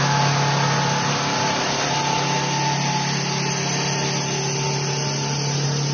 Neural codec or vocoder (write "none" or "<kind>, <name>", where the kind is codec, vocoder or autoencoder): none